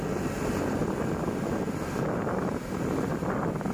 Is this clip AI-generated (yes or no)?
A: no